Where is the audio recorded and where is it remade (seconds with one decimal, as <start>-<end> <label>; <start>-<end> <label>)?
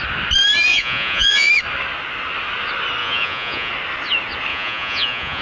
0.0-0.7 recorded; 0.7-1.5 remade; 1.5-3.0 recorded; 3.0-3.7 remade; 3.7-4.5 recorded; 4.5-5.4 remade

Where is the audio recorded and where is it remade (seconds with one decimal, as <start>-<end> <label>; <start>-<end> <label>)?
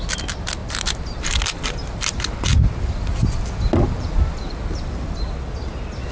0.0-6.1 recorded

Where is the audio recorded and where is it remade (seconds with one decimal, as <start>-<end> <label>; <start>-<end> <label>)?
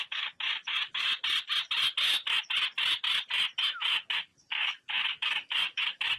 0.0-1.1 remade; 1.1-3.6 recorded; 3.6-6.2 remade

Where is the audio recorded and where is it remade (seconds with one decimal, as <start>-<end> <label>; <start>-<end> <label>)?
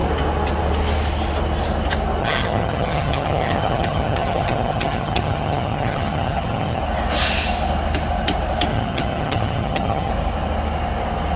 0.0-2.2 recorded; 2.2-6.8 remade; 6.8-8.7 recorded; 8.7-10.1 remade; 10.1-11.4 recorded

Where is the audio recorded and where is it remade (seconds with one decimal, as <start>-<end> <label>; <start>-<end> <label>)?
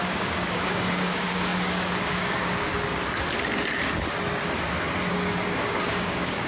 0.0-2.7 remade; 2.7-5.1 recorded; 5.1-6.5 remade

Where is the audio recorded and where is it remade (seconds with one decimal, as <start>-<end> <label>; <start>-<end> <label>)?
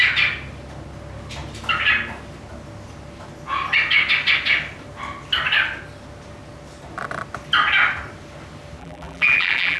0.0-8.8 recorded; 8.8-9.8 remade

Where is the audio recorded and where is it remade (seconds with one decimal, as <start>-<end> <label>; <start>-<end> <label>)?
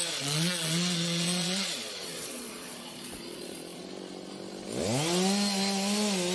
0.0-3.8 remade; 3.8-6.3 recorded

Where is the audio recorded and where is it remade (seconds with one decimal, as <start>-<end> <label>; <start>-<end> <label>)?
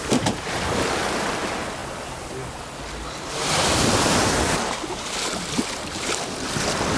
0.0-7.0 recorded